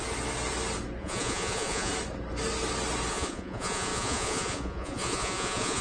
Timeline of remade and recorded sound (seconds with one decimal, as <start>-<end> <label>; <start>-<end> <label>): 0.0-1.0 recorded; 1.0-1.9 remade; 1.9-3.1 recorded; 3.1-5.8 remade